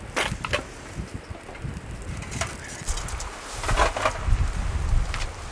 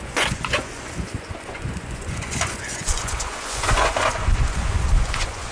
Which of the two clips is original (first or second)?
first